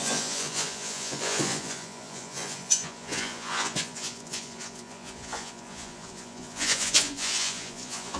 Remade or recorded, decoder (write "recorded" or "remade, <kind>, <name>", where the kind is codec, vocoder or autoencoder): remade, vocoder, Vocos